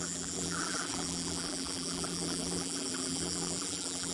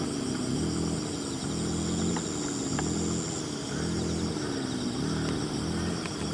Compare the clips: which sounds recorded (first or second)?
second